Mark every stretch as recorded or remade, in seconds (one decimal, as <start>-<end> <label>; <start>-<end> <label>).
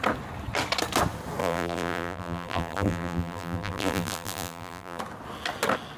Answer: 0.0-1.4 recorded; 1.4-5.0 remade; 5.0-6.0 recorded